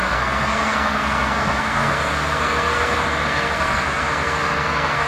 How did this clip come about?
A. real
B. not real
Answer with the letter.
B